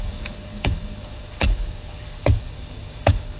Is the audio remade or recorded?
remade